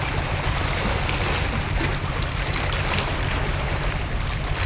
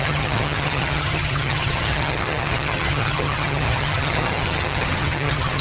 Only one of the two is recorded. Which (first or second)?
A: first